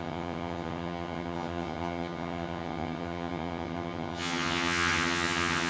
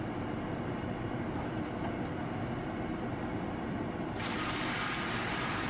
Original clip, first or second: second